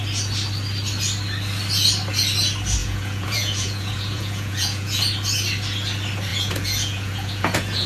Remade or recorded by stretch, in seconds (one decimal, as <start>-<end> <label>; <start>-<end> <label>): 0.0-2.8 recorded; 2.8-5.0 remade; 5.0-6.3 recorded; 6.3-7.9 remade